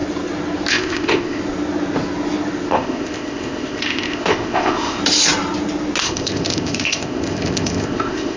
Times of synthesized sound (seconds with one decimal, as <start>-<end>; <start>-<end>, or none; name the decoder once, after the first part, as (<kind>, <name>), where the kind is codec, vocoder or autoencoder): 0.7-1.4 (codec, ZipCodec); 2.7-5.0; 6.0-8.4